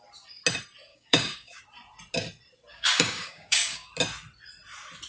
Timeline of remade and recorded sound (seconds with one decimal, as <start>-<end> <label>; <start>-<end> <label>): 0.0-0.9 recorded; 0.9-1.6 remade; 1.6-2.7 recorded; 2.7-3.9 remade; 3.9-5.1 recorded